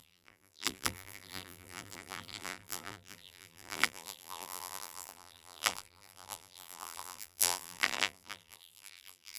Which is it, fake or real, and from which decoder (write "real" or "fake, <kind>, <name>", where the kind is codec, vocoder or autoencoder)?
fake, vocoder, BigVGAN v2